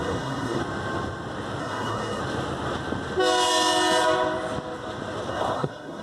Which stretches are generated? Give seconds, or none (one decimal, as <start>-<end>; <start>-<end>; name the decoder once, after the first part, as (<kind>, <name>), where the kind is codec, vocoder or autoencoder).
0.0-0.6 (codec, SNAC); 1.6-2.2; 5.3-6.0